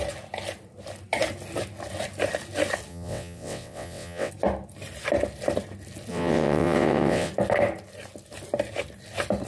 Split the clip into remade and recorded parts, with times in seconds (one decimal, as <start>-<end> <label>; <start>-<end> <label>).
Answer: 0.0-2.9 recorded; 2.9-4.3 remade; 4.3-6.1 recorded; 6.1-7.3 remade; 7.3-9.5 recorded